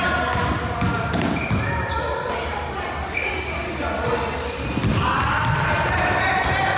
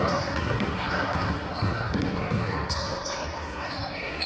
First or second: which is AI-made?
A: second